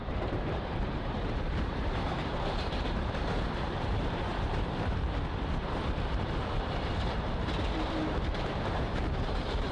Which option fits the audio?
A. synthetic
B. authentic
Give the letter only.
A